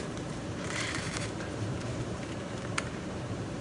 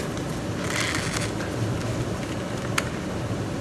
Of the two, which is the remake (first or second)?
first